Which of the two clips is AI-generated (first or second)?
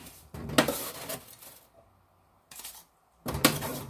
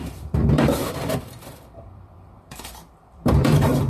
second